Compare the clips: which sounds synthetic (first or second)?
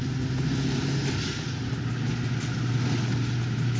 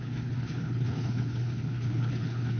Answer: second